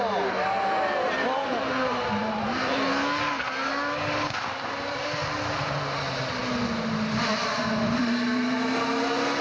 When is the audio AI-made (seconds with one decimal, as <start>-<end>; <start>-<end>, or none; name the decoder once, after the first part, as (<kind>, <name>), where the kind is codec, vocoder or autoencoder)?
none